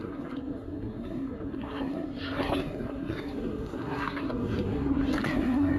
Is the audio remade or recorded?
remade